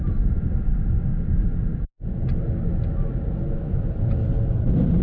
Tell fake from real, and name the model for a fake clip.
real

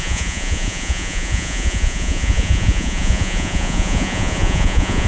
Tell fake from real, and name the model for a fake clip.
fake, vocoder, Vocos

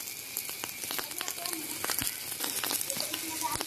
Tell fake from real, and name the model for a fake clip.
real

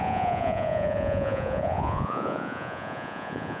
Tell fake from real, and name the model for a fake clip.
fake, vocoder, Vocos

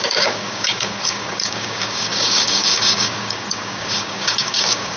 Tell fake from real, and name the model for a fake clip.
fake, codec, DAC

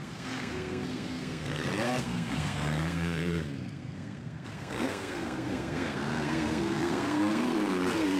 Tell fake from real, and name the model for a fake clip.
fake, codec, SNAC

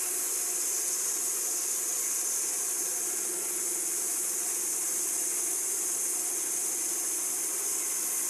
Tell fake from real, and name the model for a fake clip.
real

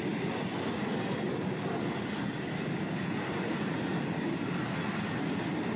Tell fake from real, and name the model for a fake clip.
real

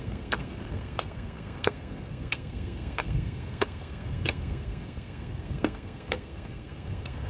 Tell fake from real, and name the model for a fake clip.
fake, codec, SNAC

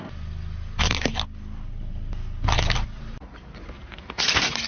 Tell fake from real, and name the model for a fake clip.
real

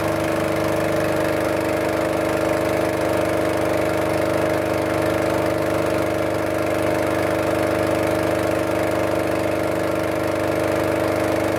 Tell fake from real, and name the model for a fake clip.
real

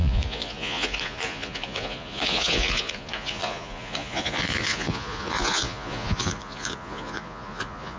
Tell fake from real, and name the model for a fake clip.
fake, vocoder, Vocos